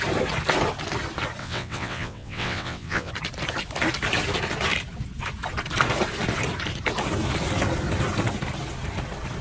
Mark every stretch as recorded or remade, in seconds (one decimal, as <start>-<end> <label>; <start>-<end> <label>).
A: 0.0-1.4 recorded; 1.4-3.1 remade; 3.1-9.4 recorded